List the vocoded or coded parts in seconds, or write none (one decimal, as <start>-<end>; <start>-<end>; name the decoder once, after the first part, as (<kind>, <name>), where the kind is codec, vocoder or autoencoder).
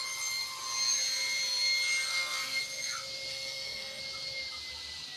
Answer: 2.1-2.6 (codec, SNAC); 3.3-4.0